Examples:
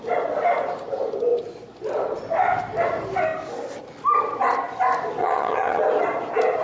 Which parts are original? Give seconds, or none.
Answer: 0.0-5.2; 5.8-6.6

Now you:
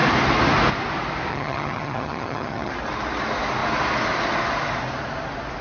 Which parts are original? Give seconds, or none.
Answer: 0.0-1.3; 2.7-5.6

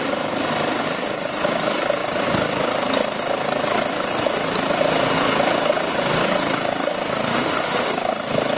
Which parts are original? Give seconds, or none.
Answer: 0.0-7.3; 7.9-8.6

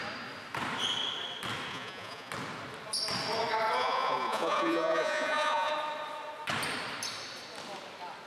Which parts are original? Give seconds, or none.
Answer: 0.0-1.7; 2.3-3.8; 5.7-8.3

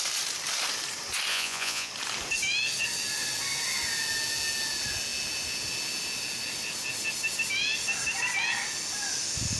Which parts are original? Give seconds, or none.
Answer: 0.0-1.3; 1.9-9.6

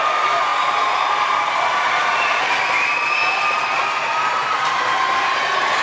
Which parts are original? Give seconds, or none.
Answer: 0.0-0.5; 1.1-2.0; 2.5-5.8

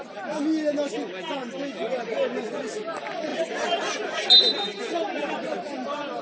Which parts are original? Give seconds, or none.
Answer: 0.0-6.2

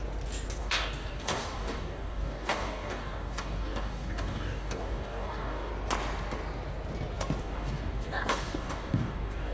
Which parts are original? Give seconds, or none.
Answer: 0.0-0.6; 5.7-7.4